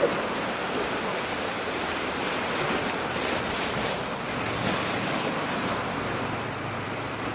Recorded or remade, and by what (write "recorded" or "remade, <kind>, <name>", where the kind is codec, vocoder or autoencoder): remade, vocoder, BigVGAN v2